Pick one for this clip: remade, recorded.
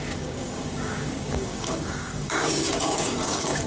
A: remade